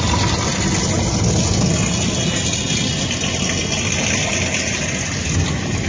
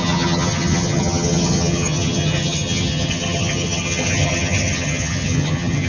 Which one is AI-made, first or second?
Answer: second